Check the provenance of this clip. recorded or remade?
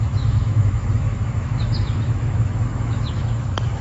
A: remade